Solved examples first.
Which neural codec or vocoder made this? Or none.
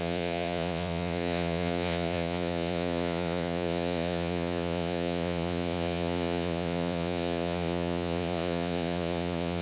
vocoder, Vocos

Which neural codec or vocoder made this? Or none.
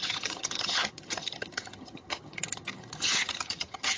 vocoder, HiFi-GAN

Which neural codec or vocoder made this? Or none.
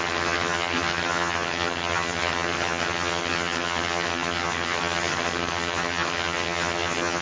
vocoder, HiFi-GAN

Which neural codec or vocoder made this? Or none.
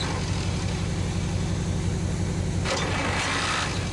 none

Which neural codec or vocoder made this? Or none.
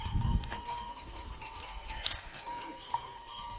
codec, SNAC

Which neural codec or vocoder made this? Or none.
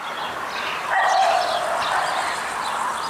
none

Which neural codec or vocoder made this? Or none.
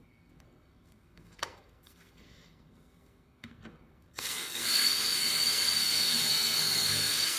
codec, SNAC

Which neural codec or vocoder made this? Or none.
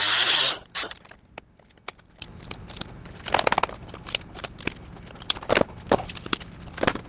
none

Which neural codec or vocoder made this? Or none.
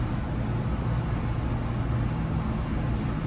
none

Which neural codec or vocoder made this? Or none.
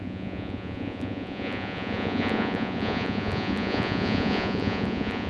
vocoder, Vocos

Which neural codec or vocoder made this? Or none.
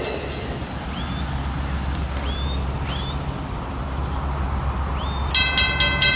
none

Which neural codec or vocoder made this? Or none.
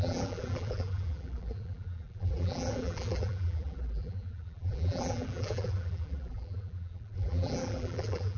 vocoder, BigVGAN v2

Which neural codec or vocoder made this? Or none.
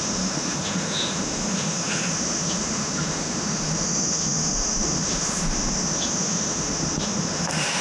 autoencoder, DAC-VAE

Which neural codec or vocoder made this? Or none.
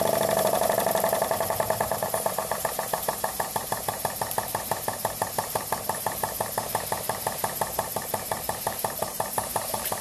vocoder, BigVGAN v2